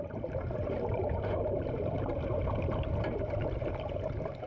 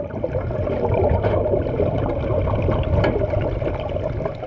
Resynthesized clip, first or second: first